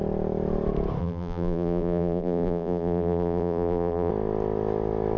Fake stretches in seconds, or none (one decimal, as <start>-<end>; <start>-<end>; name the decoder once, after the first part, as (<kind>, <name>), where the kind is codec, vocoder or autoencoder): 1.0-4.1 (vocoder, BigVGAN v2)